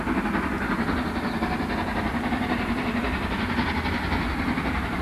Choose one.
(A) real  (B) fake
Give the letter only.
A